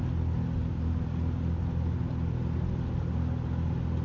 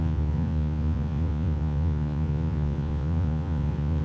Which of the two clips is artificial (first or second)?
second